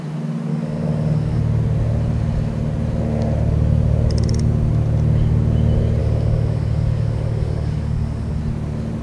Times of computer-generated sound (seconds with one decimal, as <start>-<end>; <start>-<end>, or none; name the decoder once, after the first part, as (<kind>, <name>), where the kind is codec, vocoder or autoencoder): 0.5-1.4 (codec, DAC); 6.0-8.4